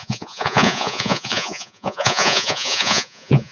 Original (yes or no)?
no